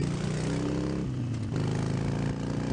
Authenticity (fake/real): real